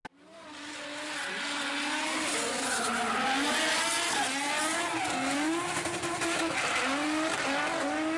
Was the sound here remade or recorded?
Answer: recorded